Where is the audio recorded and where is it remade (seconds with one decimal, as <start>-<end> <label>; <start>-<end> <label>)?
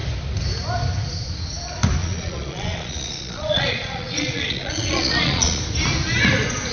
0.0-2.0 recorded; 2.0-5.6 remade; 5.6-6.7 recorded